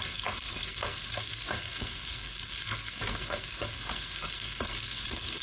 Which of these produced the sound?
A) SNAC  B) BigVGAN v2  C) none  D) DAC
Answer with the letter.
A